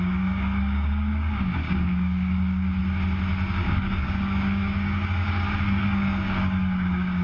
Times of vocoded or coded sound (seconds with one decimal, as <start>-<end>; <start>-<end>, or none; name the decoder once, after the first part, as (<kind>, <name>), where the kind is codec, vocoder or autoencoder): 0.0-2.8 (codec, DAC); 3.5-7.2